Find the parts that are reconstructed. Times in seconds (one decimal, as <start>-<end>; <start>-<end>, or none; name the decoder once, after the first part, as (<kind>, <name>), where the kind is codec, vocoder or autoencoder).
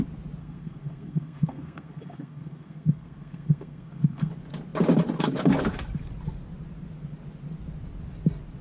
0.4-4.3 (codec, SNAC)